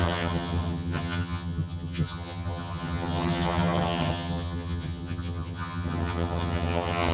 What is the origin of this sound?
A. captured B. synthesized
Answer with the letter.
B